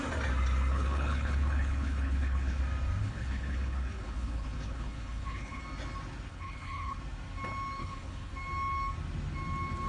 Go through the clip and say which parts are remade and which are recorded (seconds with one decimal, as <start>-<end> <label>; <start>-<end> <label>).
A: 0.0-0.7 recorded; 0.7-2.6 remade; 2.6-3.0 recorded; 3.0-5.6 remade; 5.6-6.3 recorded; 6.3-7.0 remade; 7.0-7.8 recorded; 7.8-8.3 remade; 8.3-9.9 recorded

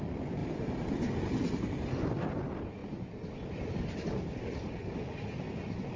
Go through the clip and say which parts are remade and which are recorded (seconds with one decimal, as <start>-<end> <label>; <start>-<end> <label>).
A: 0.0-6.0 recorded